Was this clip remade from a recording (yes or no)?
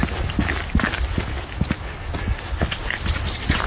no